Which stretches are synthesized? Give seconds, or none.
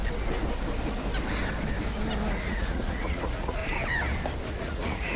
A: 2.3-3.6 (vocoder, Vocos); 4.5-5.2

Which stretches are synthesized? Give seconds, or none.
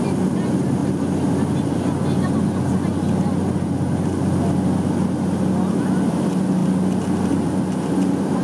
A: none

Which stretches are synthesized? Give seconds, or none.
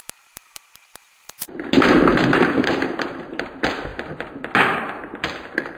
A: 0.0-2.1 (vocoder, BigVGAN v2); 2.6-3.9; 4.8-5.8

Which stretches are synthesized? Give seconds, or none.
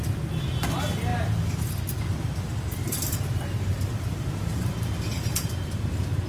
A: 2.8-4.7 (vocoder, BigVGAN v2)